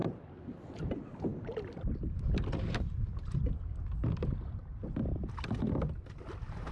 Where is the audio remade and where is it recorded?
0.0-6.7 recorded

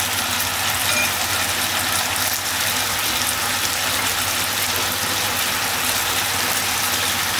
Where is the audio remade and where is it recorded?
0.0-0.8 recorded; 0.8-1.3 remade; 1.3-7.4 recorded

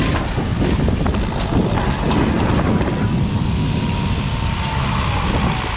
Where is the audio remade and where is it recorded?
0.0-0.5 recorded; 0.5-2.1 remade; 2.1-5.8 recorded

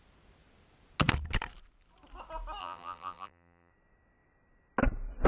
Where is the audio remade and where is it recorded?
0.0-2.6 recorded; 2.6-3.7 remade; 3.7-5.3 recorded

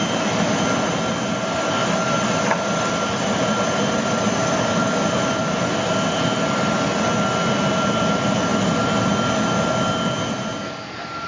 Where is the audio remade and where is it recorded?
0.0-1.8 recorded; 1.8-5.7 remade; 5.7-11.3 recorded

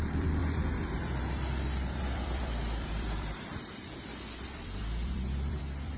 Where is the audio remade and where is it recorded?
0.0-4.1 remade; 4.1-4.8 recorded; 4.8-6.0 remade

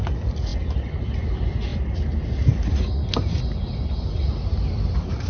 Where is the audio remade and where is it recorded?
0.0-5.3 recorded